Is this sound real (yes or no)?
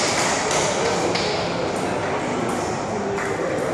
yes